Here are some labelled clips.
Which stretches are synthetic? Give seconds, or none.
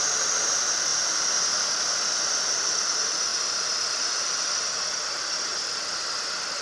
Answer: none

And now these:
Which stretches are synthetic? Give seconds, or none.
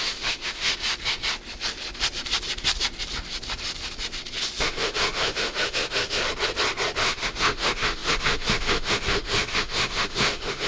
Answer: 0.0-0.7 (autoencoder, DAC-VAE); 4.6-6.2; 7.0-10.7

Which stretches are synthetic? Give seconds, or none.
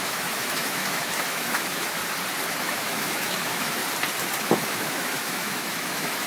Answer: 0.0-2.0 (autoencoder, DAC-VAE); 2.5-3.8; 4.4-6.3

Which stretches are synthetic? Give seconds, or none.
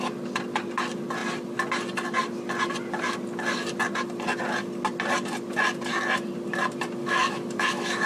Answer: 7.0-8.1 (autoencoder, DAC-VAE)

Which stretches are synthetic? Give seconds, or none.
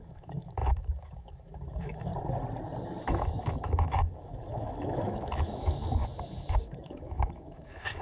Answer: 0.0-2.1 (autoencoder, DAC-VAE); 3.0-8.0